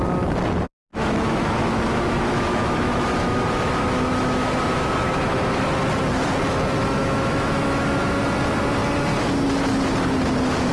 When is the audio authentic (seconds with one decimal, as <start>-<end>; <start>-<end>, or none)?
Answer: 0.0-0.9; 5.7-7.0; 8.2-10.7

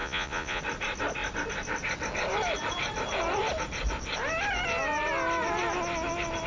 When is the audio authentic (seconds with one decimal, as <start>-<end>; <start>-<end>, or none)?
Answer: 0.6-6.5

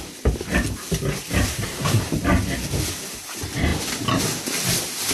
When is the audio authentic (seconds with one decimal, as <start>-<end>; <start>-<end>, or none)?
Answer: 0.0-1.5; 2.0-5.1